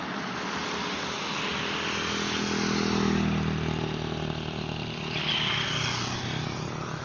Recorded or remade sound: recorded